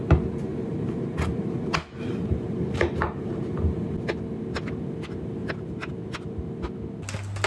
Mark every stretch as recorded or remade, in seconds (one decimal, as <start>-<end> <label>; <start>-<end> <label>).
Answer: 0.0-0.5 recorded; 0.5-3.4 remade; 3.4-5.4 recorded; 5.4-5.9 remade; 5.9-7.5 recorded